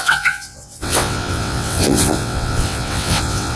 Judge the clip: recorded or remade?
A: remade